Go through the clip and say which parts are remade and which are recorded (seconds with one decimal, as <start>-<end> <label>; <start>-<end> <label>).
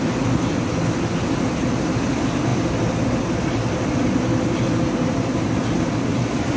0.0-6.6 recorded